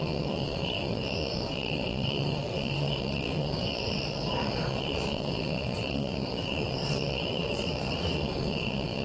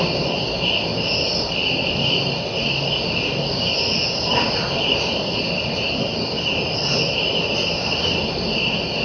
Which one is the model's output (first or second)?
first